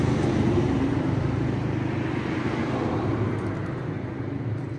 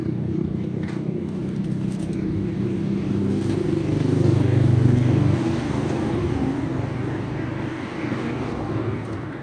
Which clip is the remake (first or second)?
second